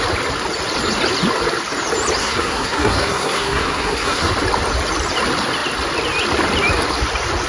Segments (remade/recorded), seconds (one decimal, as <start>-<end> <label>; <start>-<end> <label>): 0.0-2.2 recorded; 2.2-4.3 remade; 4.3-7.5 recorded